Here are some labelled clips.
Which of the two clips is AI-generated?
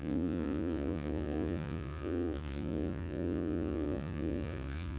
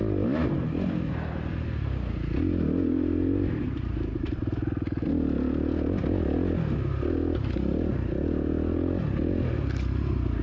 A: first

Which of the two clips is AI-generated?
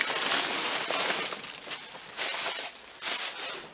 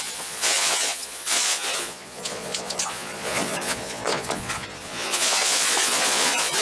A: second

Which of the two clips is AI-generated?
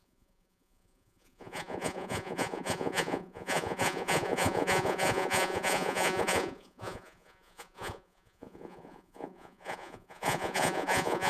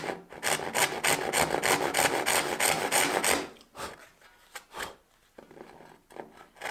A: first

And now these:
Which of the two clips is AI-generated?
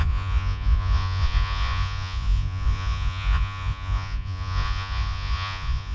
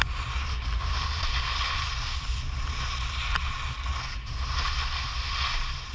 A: first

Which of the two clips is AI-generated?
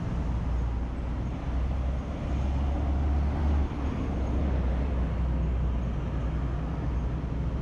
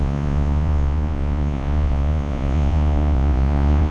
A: second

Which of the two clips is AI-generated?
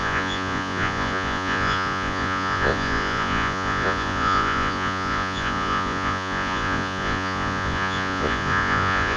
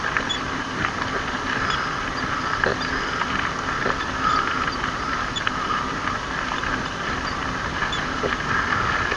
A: first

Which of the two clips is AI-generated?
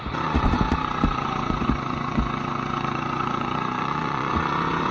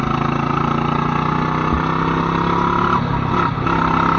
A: first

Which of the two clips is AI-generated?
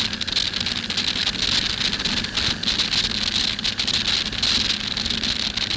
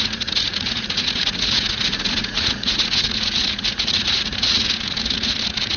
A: second